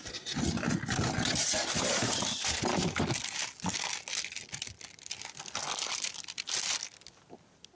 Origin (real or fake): real